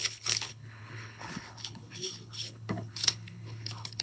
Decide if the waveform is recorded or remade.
remade